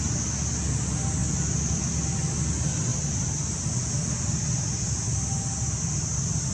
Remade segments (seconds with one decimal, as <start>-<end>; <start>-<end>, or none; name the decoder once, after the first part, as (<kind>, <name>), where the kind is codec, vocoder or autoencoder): none